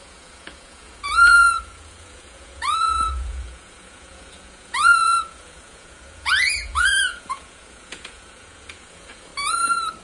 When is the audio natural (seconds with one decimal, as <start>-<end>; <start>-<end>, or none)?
9.3-10.0